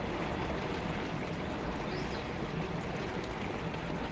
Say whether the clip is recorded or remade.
recorded